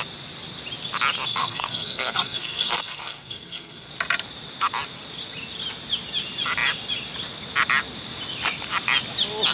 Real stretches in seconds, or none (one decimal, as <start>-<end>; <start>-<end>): 0.0-1.3; 3.9-9.5